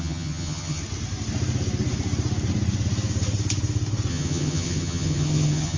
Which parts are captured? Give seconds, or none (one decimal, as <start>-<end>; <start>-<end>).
0.8-4.1